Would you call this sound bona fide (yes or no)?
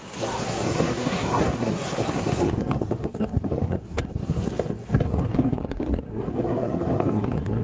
no